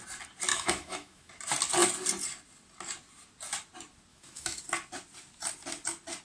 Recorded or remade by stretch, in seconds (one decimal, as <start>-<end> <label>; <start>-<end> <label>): 0.0-0.5 recorded; 0.5-1.3 remade; 1.3-4.1 recorded; 4.1-4.6 remade; 4.6-6.2 recorded